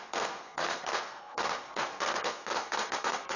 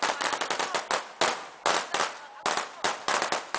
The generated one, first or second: first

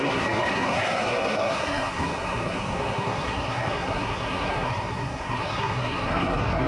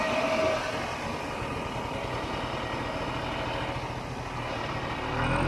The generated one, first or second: first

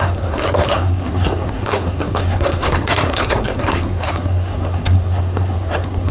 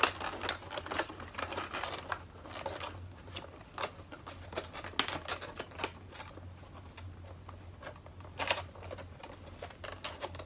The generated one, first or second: first